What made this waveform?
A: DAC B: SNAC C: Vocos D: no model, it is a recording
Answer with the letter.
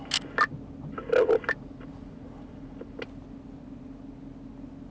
D